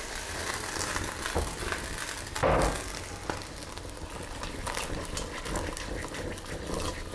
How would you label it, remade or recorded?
recorded